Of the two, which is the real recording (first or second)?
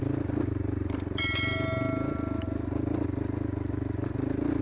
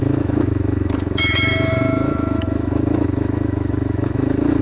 first